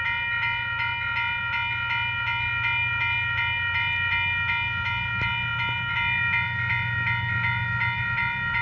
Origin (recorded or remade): recorded